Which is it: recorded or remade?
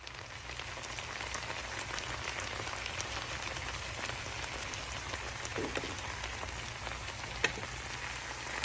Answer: recorded